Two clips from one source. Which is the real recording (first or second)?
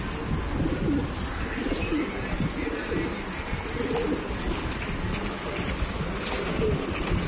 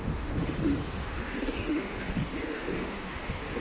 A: first